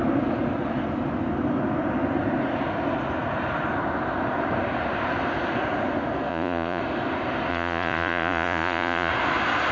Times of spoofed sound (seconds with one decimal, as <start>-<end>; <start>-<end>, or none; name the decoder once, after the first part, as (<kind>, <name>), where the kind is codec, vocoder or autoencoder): 6.3-6.8 (vocoder, Vocos); 7.5-9.1